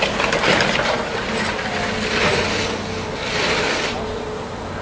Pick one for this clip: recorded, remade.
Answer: recorded